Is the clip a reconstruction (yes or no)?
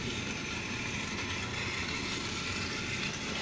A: no